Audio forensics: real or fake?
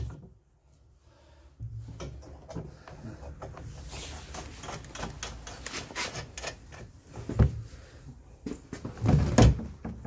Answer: real